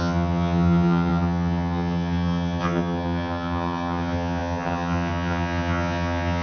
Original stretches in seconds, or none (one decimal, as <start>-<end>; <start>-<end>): none